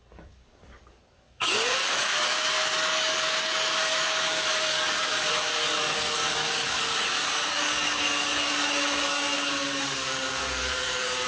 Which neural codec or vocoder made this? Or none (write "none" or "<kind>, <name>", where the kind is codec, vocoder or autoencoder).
codec, DAC